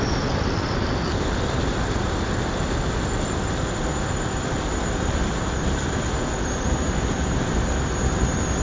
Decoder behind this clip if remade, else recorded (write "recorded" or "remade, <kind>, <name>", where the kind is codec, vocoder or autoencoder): recorded